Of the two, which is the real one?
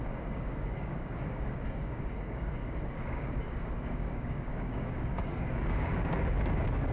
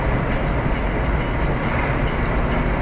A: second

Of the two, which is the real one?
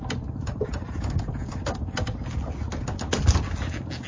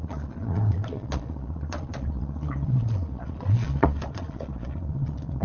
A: first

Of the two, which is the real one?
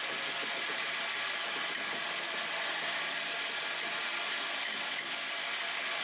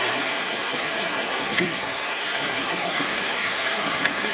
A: first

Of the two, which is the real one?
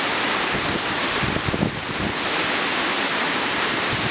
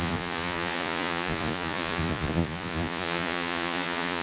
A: first